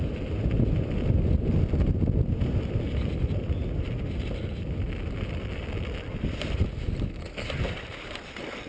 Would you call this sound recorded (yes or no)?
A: yes